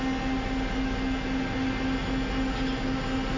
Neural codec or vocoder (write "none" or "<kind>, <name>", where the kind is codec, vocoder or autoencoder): none